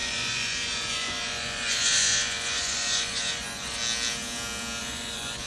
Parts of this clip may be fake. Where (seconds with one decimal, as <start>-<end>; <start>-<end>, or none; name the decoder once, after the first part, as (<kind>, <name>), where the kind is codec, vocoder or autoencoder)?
0.0-3.8 (vocoder, Vocos); 4.8-5.5